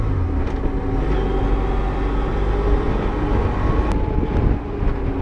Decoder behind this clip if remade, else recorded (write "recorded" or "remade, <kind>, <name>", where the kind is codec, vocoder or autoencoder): recorded